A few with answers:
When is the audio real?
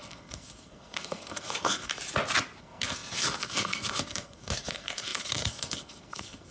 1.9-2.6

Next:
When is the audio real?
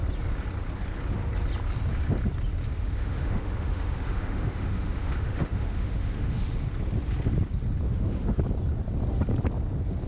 0.0-2.6; 6.6-7.9; 8.4-10.1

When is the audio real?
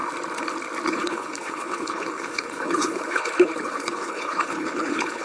0.0-0.9